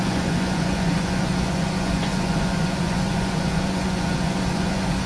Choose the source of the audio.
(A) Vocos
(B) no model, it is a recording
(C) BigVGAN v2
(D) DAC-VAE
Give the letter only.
A